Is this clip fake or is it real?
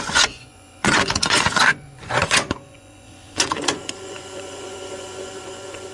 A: fake